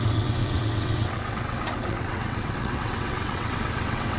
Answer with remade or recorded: remade